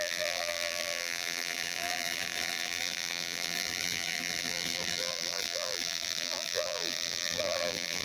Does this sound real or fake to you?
fake